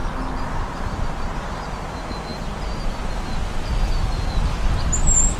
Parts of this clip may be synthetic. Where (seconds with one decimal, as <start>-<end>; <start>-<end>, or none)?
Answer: none